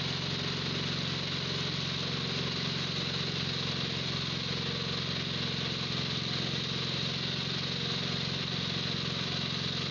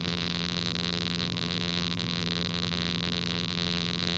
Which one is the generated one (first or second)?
second